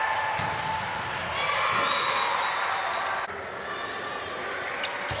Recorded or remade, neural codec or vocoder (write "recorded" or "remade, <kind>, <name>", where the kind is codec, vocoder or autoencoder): recorded